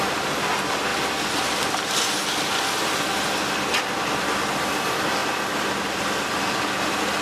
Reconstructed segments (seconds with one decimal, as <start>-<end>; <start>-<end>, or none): none